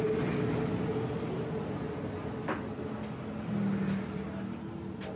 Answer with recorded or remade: recorded